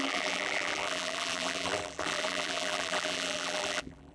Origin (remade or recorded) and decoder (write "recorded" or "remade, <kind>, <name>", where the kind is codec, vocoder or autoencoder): remade, vocoder, BigVGAN v2